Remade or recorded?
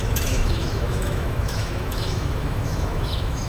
remade